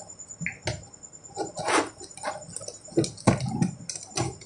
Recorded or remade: recorded